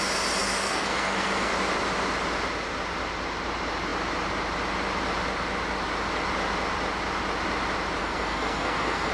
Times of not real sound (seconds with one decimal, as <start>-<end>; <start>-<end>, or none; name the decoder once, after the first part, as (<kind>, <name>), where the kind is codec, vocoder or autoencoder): 0.4-1.5 (codec, SNAC); 8.0-9.1